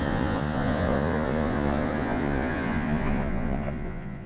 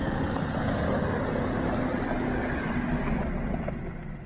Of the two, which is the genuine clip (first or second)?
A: second